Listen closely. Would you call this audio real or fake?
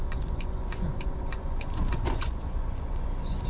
fake